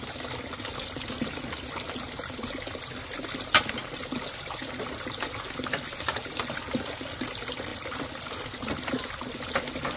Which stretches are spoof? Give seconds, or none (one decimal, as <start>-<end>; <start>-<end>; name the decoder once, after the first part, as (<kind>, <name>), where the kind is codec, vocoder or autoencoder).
none